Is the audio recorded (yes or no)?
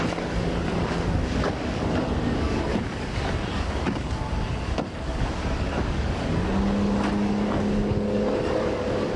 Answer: no